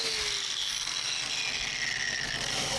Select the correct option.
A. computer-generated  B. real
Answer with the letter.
B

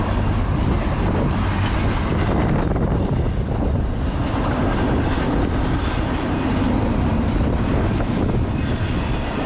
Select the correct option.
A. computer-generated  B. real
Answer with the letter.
B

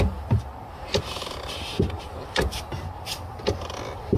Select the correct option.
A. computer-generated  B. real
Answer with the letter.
B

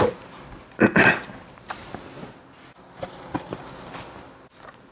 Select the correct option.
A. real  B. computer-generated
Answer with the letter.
A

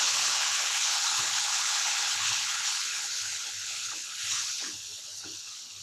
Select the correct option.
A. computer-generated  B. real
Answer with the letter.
A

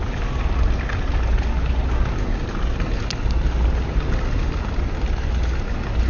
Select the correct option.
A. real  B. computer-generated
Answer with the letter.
A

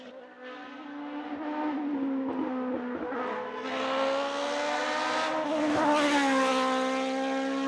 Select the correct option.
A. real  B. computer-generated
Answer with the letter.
A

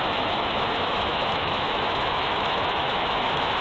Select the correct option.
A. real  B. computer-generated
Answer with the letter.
B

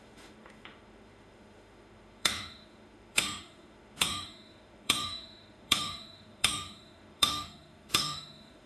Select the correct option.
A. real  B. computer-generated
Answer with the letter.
B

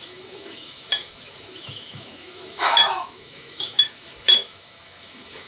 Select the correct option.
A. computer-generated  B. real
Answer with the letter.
A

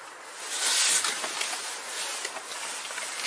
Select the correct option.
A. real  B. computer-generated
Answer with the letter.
A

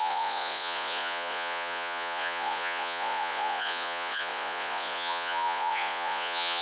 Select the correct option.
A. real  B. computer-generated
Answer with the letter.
B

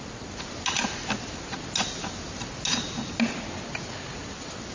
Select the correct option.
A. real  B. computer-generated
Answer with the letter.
A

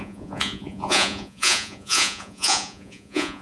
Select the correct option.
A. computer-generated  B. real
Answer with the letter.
A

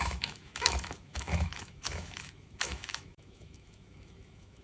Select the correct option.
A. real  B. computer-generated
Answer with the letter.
B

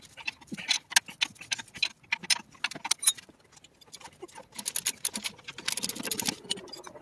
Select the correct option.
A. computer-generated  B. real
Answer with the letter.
B